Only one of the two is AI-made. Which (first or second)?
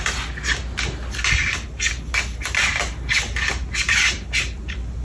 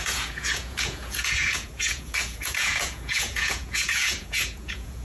second